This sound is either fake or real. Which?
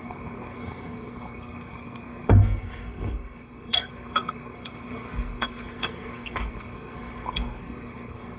fake